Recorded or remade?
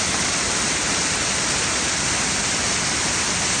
recorded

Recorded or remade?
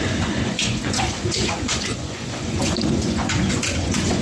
remade